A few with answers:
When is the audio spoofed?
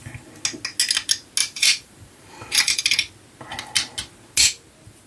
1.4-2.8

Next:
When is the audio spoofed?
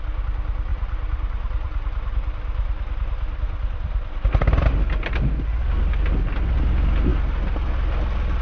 0.7-4.7